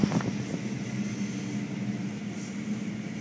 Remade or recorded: recorded